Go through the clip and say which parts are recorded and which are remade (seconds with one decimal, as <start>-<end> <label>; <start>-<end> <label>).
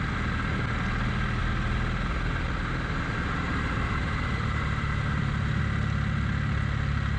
0.0-1.4 recorded; 1.4-5.6 remade; 5.6-7.2 recorded